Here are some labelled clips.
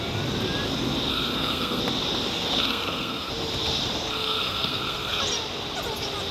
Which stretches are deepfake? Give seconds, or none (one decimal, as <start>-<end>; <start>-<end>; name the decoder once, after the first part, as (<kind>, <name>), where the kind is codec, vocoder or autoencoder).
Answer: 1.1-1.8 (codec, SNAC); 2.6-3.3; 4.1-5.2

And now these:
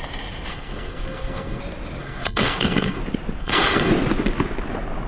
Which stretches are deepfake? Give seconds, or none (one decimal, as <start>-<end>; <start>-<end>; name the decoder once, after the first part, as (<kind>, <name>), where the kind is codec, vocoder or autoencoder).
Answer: 0.5-1.6 (codec, SNAC); 2.0-3.0; 3.4-3.9

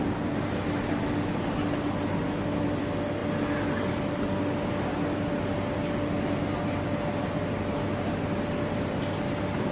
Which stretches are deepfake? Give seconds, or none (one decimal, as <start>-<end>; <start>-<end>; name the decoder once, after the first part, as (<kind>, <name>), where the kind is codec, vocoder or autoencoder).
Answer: none